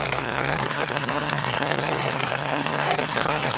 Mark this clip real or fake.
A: fake